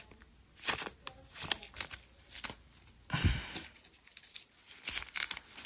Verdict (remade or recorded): recorded